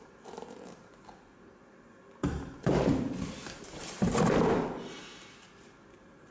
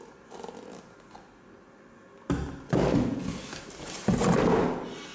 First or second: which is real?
second